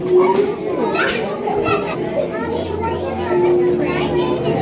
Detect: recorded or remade recorded